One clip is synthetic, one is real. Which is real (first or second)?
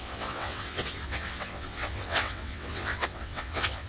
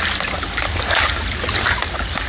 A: second